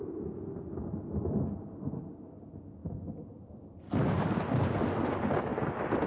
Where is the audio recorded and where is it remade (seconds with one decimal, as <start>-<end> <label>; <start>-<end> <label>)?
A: 0.0-6.1 recorded

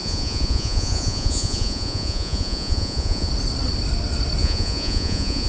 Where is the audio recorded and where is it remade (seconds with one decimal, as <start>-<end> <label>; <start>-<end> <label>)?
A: 0.0-3.3 remade; 3.3-4.4 recorded; 4.4-5.5 remade

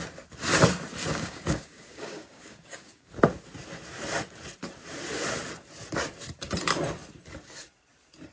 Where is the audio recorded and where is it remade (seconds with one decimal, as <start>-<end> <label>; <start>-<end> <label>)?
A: 0.0-1.0 recorded; 1.0-3.1 remade; 3.1-8.3 recorded

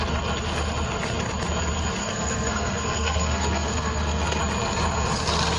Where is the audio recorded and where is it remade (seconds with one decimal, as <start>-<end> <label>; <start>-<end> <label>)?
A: 0.0-2.0 recorded; 2.0-4.4 remade; 4.4-5.6 recorded

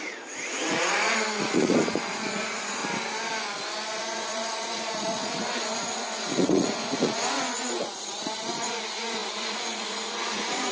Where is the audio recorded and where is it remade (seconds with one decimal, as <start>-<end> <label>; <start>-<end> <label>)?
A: 0.0-2.8 remade; 2.8-4.0 recorded; 4.0-10.7 remade

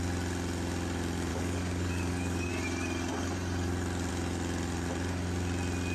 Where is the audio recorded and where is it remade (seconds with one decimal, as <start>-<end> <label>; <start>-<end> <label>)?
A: 0.0-1.3 recorded; 1.3-2.5 remade; 2.5-5.9 recorded

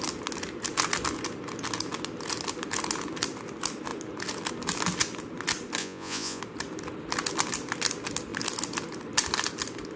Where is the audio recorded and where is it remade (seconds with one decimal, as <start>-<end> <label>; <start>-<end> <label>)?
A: 0.0-5.8 recorded; 5.8-6.4 remade; 6.4-10.0 recorded

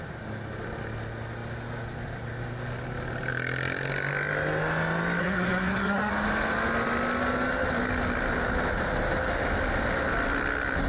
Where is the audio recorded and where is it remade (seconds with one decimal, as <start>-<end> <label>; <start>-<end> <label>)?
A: 0.0-5.2 recorded; 5.2-6.1 remade; 6.1-10.9 recorded